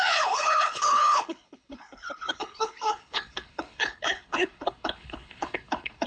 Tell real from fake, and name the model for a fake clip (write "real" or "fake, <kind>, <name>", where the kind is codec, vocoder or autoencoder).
fake, codec, HILCodec